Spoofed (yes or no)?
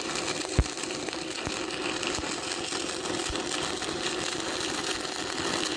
no